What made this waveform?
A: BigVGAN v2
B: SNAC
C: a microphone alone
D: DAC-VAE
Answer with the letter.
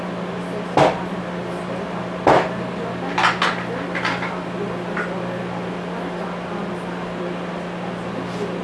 C